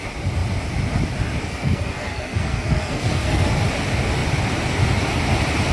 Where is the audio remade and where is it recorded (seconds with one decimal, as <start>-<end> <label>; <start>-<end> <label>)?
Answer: 0.0-1.4 recorded; 1.4-3.5 remade; 3.5-5.7 recorded